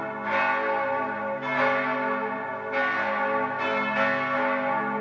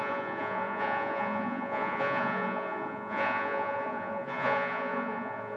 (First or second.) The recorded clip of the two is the first